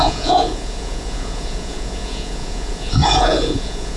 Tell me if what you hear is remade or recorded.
remade